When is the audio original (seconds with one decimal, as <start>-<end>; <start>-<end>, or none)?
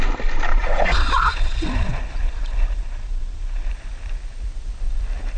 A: 0.0-0.5; 3.7-5.4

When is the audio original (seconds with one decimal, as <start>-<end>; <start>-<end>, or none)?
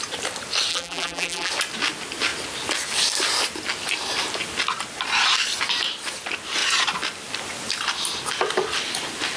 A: 0.0-0.7; 1.5-9.4